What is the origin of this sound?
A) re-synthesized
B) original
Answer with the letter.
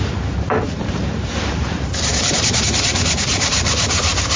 A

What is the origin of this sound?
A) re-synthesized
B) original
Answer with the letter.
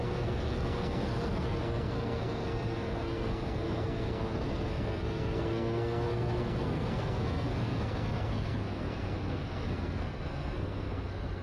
A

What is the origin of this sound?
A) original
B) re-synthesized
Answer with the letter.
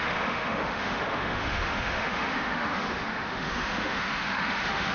B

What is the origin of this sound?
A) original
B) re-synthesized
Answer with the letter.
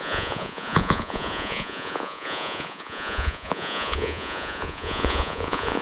B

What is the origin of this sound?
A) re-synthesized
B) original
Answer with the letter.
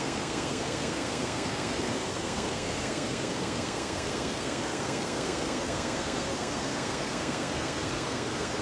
A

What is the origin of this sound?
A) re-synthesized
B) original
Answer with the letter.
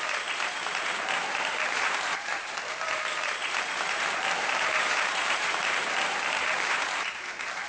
A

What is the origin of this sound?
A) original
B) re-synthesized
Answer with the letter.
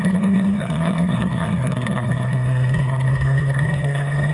B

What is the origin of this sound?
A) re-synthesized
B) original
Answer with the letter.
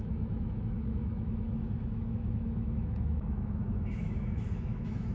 A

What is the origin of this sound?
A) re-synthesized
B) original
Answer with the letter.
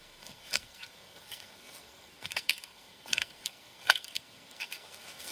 A